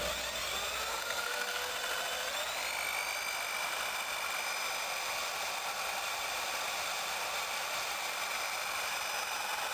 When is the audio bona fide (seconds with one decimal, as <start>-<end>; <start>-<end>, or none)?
0.0-0.9; 1.7-9.7